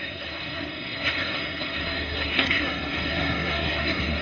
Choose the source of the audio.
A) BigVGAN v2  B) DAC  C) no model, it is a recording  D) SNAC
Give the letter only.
D